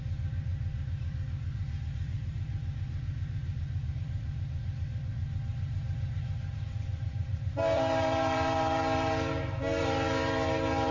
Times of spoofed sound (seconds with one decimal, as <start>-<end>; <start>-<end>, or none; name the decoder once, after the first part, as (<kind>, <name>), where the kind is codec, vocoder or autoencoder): 0.0-10.9 (vocoder, BigVGAN v2)

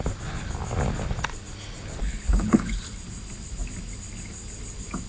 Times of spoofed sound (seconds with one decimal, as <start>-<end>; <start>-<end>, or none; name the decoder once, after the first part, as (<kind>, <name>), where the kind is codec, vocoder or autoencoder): 2.0-3.0 (codec, HILCodec)

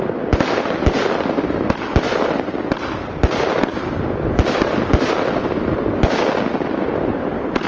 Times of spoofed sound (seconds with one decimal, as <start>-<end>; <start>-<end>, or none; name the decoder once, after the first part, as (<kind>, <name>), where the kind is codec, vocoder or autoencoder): none

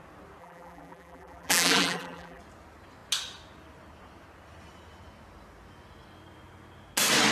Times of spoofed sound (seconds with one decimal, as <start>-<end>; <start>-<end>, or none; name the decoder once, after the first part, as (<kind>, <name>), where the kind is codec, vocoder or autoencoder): 0.4-2.4 (vocoder, BigVGAN v2)

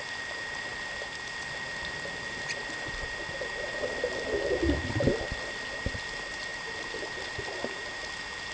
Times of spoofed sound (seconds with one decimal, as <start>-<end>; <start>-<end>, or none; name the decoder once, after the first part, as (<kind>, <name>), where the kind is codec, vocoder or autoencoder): 6.5-7.5 (vocoder, BigVGAN v2)